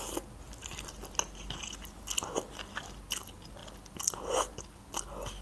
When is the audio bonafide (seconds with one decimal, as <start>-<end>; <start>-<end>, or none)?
0.0-5.4